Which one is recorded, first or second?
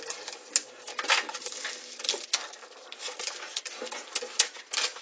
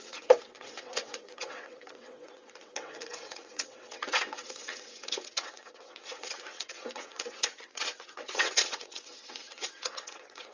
first